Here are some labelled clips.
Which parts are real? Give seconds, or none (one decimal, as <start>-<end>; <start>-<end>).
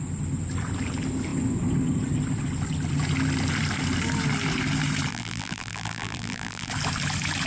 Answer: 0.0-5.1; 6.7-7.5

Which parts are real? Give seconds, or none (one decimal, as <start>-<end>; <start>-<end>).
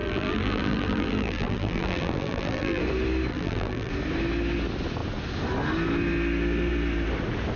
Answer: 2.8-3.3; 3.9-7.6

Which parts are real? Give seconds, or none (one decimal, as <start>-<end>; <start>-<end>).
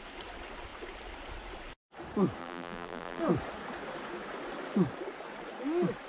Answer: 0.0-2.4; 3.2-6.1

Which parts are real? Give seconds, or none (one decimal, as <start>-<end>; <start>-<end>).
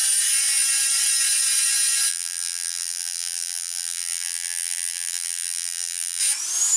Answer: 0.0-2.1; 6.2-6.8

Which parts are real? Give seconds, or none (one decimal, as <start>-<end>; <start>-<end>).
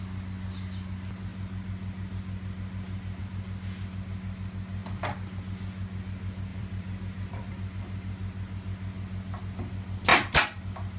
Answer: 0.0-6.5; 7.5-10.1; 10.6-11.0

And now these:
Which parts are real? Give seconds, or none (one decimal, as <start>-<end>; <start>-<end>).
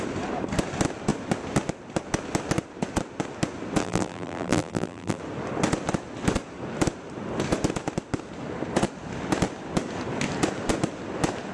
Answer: 0.0-3.8; 5.2-11.5